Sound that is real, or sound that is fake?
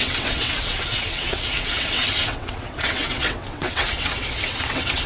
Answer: fake